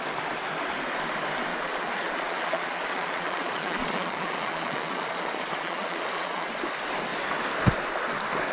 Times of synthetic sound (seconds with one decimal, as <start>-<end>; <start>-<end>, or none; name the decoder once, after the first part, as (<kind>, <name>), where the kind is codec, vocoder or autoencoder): 1.5-6.5 (vocoder, Vocos)

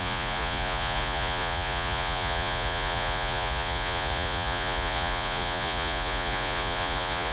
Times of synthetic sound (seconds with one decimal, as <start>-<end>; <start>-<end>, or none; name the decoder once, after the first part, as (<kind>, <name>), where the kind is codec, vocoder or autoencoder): 0.0-7.3 (vocoder, Vocos)

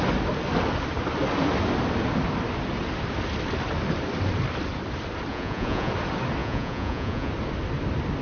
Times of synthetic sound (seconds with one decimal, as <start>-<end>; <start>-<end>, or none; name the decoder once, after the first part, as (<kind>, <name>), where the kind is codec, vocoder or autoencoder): 5.3-5.9 (vocoder, Vocos); 6.4-7.3

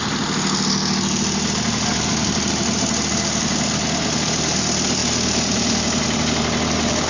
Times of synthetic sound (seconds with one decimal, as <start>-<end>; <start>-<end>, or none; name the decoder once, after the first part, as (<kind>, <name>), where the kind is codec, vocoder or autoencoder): none

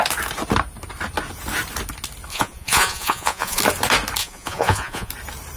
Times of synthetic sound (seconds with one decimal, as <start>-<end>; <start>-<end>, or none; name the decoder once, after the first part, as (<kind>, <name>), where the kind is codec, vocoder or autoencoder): 2.3-3.6 (vocoder, Vocos); 4.2-5.1

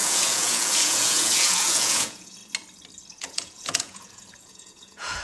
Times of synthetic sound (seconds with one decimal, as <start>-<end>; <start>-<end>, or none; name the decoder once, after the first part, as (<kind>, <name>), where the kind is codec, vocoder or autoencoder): 0.0-2.4 (vocoder, Vocos); 3.1-5.2